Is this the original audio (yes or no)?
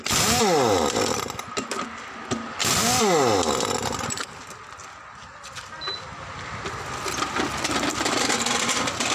yes